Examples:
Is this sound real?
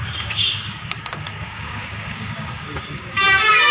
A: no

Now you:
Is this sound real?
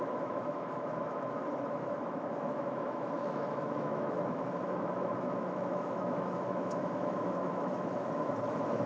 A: no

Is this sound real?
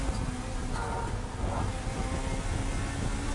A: yes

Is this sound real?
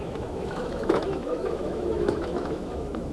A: no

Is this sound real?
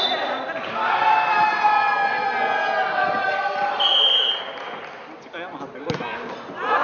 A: yes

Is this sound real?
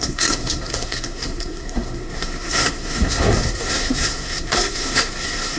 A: no